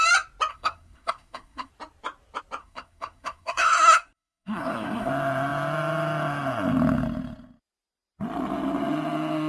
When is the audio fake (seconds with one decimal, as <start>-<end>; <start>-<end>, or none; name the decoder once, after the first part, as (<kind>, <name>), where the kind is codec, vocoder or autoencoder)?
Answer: 0.5-1.7 (codec, SNAC); 2.6-5.1

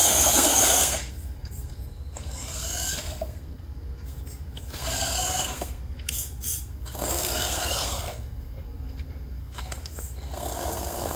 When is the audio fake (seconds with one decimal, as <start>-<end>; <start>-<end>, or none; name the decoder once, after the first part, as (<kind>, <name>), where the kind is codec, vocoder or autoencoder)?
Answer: 0.0-11.2 (codec, SNAC)

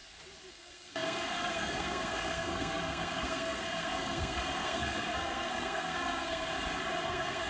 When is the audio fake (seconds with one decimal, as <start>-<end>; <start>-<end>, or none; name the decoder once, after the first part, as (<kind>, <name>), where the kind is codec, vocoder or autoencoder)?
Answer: 0.5-6.5 (codec, SNAC); 7.1-7.5

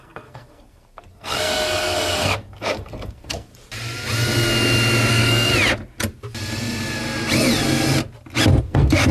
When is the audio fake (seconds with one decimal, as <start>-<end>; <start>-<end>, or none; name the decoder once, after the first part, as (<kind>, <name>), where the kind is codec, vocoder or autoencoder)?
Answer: 0.0-3.5 (codec, SNAC); 5.1-5.5; 8.6-9.1

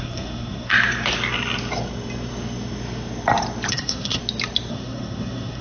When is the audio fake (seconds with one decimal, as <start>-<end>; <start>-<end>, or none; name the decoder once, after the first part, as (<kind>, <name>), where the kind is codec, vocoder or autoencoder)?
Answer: 0.0-0.7 (codec, SNAC); 3.7-4.2; 4.7-5.6

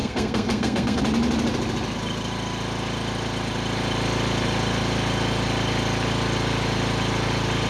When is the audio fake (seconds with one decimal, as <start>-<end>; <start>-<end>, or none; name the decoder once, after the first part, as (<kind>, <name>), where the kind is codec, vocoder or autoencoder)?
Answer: 0.0-1.0 (codec, SNAC)

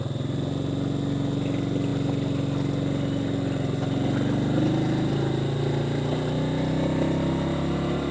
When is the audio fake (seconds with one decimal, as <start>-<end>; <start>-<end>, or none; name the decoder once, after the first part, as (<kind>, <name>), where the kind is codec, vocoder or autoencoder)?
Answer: none